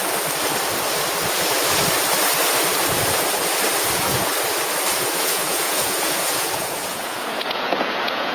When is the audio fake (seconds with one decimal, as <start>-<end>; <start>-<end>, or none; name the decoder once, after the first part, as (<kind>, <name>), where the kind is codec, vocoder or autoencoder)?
3.9-4.3 (vocoder, Vocos); 5.1-8.3